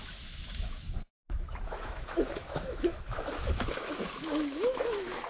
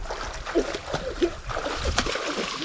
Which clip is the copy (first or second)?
first